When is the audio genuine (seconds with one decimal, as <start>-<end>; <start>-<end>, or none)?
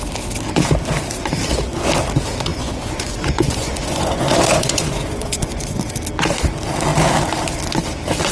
0.0-2.5; 5.8-8.3